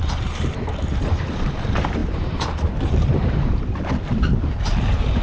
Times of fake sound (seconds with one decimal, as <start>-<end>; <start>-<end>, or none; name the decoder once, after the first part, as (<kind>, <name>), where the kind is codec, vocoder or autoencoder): 0.0-5.2 (vocoder, BigVGAN v2)